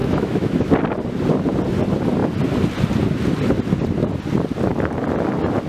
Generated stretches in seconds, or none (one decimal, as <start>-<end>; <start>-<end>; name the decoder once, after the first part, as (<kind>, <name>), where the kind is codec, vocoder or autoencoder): 0.0-0.7 (autoencoder, DAC-VAE)